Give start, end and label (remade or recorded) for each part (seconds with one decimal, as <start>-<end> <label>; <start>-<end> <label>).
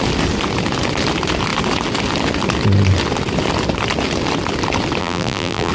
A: 0.0-5.0 recorded; 5.0-5.7 remade